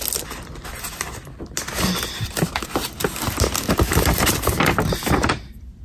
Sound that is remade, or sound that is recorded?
recorded